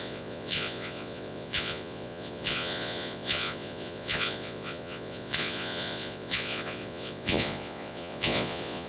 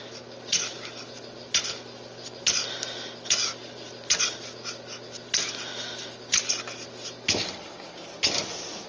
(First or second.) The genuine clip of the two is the second